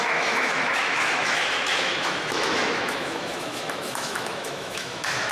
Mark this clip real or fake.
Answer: fake